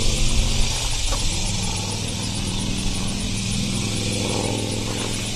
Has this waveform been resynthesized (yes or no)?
no